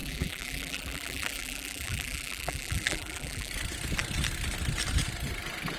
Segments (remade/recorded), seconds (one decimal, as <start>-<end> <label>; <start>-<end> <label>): 0.0-3.5 remade; 3.5-5.8 recorded